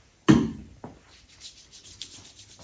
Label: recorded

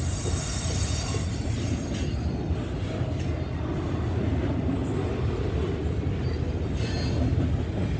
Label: recorded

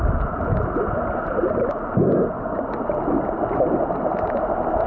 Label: recorded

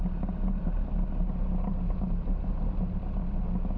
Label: recorded